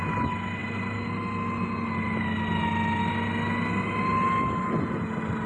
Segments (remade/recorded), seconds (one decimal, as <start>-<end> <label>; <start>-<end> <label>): 0.0-5.5 recorded